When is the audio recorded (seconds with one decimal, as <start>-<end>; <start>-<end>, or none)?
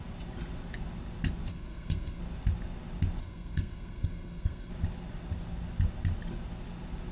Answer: 0.0-1.5; 2.2-3.2; 4.7-7.1